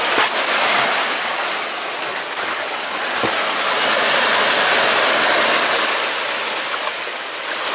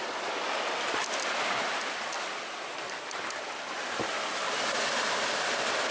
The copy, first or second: second